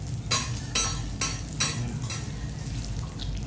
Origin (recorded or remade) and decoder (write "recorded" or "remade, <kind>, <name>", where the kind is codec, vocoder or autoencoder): recorded